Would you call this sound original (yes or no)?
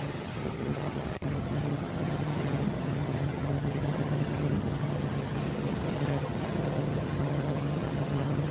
no